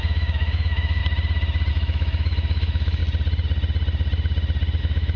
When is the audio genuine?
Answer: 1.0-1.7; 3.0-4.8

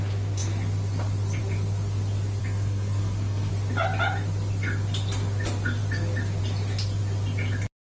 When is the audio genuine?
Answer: 0.0-2.4; 3.5-7.8

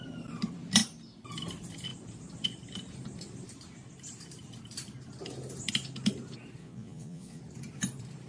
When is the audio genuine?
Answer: 0.0-6.6; 7.4-8.3

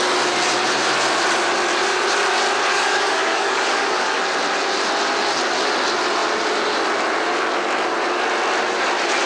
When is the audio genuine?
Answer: 0.0-2.7; 4.2-9.3

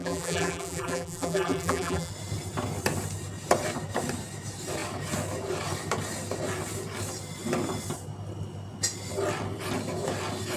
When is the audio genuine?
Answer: 2.1-10.6